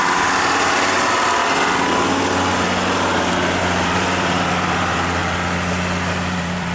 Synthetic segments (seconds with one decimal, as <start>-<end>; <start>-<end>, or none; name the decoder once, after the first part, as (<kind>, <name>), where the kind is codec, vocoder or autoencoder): 0.0-1.4 (vocoder, BigVGAN v2); 3.6-5.2; 6.1-6.7